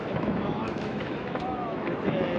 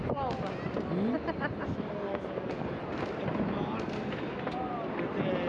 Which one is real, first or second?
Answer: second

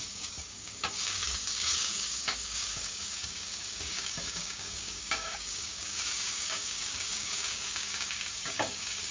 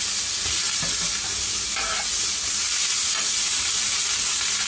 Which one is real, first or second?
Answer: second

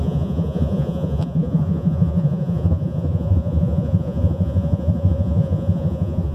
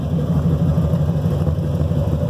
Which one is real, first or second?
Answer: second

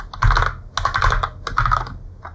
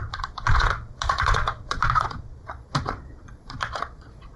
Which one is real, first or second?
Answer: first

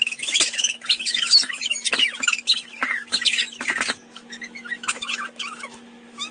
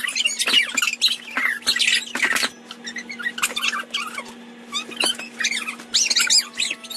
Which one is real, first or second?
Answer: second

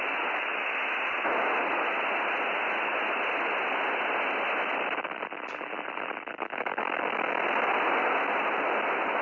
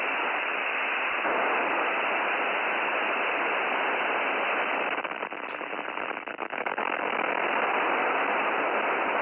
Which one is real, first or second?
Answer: first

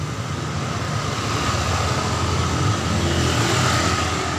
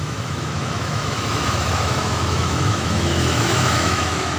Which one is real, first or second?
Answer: first